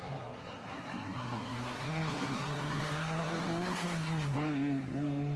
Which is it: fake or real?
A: fake